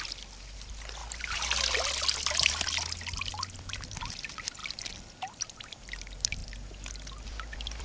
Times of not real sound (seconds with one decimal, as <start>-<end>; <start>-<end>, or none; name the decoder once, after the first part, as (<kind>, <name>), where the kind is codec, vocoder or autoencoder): 0.0-4.6 (vocoder, BigVGAN v2); 5.2-7.8